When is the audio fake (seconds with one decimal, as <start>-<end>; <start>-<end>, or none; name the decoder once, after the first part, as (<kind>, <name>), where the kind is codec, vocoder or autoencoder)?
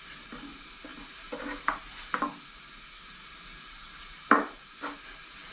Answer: none